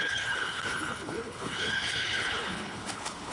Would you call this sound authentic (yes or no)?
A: no